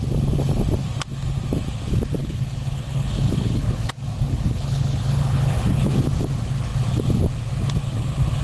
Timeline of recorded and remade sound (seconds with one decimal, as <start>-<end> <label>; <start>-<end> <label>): 0.0-2.2 recorded; 2.2-3.9 remade; 3.9-4.3 recorded; 4.3-5.9 remade; 5.9-8.4 recorded